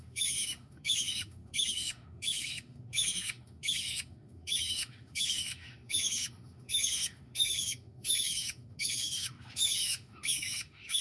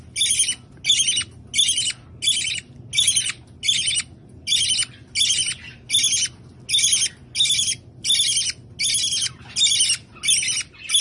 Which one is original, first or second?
second